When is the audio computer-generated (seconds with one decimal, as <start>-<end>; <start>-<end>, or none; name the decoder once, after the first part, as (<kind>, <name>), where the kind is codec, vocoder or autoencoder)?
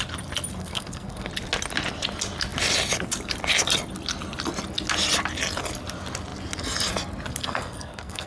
0.6-1.3 (codec, SNAC); 7.4-8.3